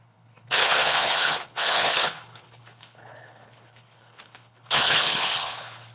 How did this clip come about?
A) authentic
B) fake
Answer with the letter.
B